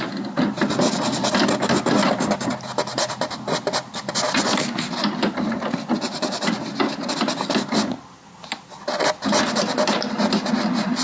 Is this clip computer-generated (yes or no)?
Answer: no